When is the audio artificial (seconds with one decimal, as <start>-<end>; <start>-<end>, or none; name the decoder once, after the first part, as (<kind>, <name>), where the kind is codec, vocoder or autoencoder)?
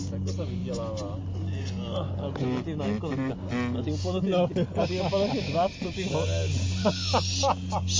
none